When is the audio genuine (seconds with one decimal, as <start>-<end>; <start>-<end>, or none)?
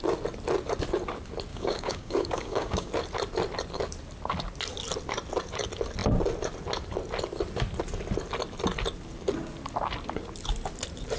0.0-1.5; 2.9-11.2